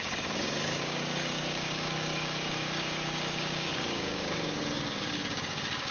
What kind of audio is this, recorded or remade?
remade